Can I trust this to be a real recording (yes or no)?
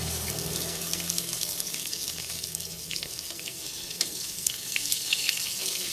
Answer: no